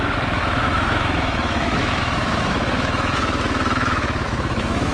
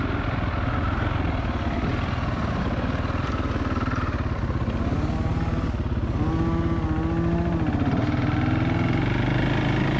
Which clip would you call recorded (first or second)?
second